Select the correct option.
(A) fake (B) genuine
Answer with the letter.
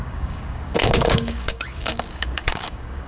A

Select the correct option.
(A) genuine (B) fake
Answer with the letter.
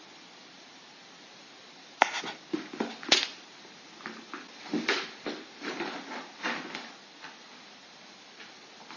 B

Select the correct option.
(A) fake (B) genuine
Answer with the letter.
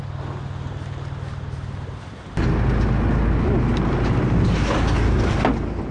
B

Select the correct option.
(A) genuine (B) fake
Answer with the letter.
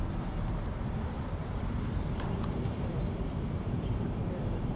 B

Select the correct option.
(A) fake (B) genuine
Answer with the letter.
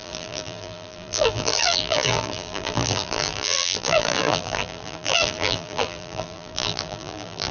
A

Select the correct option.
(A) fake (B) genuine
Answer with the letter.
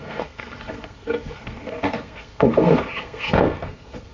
A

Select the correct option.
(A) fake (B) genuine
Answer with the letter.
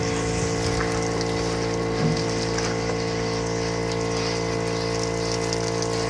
B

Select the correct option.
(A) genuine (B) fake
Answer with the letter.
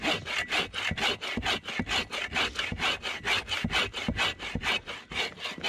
A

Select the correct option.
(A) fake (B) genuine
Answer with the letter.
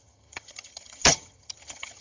A